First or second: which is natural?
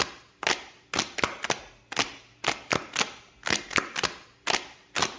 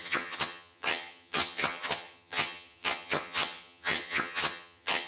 first